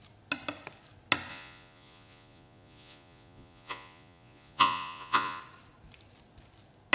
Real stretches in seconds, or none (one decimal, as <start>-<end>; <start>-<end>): 0.0-1.3; 5.4-6.9